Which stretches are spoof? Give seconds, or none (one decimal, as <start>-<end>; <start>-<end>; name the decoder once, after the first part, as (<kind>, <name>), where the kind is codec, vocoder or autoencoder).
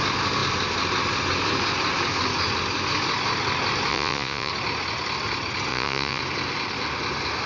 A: 3.9-4.5 (vocoder, Vocos); 5.7-6.2